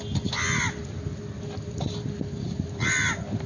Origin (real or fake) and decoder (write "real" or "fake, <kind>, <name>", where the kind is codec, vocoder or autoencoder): real